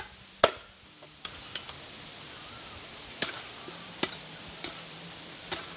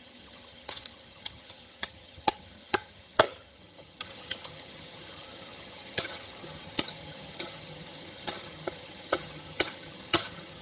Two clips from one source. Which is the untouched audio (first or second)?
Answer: first